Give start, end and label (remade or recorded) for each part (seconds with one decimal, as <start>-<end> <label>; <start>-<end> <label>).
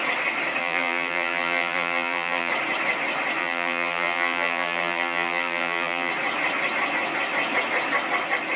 0.0-0.6 recorded; 0.6-2.5 remade; 2.5-3.4 recorded; 3.4-6.1 remade; 6.1-8.6 recorded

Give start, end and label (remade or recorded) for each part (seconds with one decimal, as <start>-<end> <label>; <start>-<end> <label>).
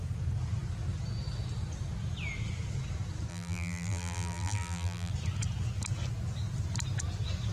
0.0-3.3 recorded; 3.3-5.1 remade; 5.1-7.5 recorded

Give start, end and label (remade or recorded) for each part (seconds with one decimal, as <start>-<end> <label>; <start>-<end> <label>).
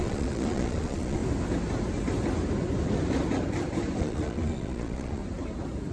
0.0-1.2 remade; 1.2-4.0 recorded; 4.0-5.2 remade; 5.2-5.9 recorded